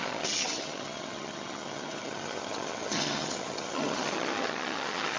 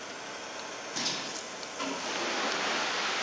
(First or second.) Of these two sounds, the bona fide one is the second